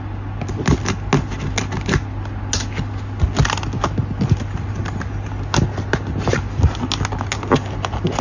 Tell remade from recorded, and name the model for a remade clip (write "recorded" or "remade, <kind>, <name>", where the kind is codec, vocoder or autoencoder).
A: recorded